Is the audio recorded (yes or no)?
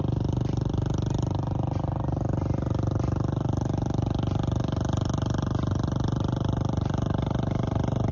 yes